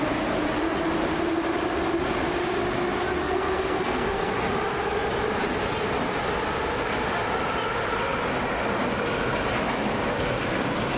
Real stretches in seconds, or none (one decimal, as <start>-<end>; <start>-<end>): 0.0-3.2; 4.3-11.0